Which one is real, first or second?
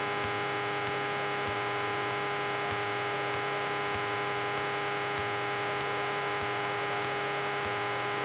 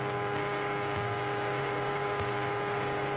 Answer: first